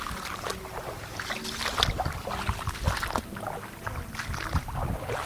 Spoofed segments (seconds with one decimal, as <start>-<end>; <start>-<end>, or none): none